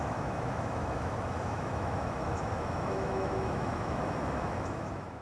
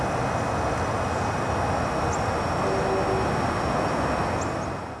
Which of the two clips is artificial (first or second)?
first